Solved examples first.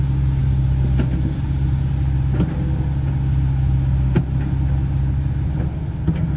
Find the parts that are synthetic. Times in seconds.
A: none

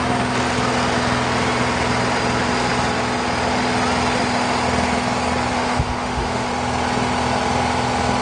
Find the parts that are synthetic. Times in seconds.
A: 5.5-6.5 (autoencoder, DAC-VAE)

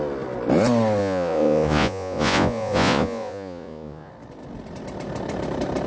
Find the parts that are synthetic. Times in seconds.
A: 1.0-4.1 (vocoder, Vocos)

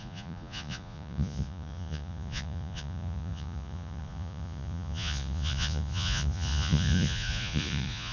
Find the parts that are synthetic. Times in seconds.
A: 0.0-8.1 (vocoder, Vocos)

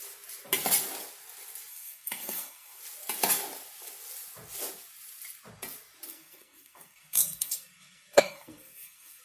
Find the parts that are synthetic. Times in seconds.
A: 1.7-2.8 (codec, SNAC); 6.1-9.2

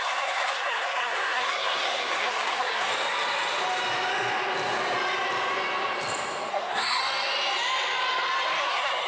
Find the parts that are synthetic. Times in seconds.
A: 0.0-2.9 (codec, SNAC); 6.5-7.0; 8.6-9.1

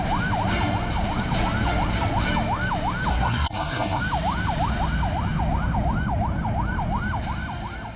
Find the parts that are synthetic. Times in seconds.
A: 3.1-4.0 (codec, SNAC)